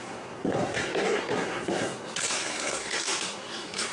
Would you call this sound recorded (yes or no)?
no